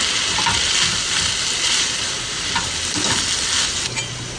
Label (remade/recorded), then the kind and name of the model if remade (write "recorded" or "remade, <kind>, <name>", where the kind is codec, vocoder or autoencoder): recorded